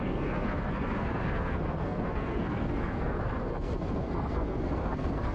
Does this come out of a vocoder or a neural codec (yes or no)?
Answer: yes